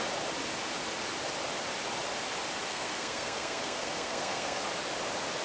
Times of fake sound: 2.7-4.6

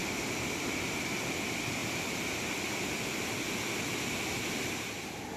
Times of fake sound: none